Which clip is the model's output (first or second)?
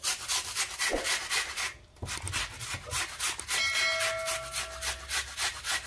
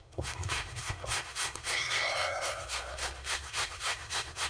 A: second